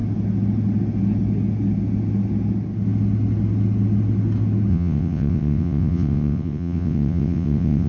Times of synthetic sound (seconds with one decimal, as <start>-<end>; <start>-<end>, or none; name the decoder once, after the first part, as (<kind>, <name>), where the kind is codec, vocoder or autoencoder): 4.7-7.9 (vocoder, WaveNeXt)